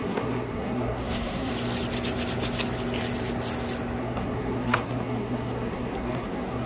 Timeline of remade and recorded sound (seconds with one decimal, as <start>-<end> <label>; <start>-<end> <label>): 0.0-1.5 remade; 1.5-4.0 recorded; 4.0-6.7 remade

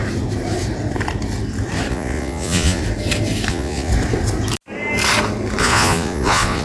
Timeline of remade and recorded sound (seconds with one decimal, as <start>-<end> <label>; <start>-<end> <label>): 0.0-1.9 recorded; 1.9-2.8 remade; 2.8-3.5 recorded; 3.5-3.9 remade; 3.9-5.6 recorded; 5.6-6.6 remade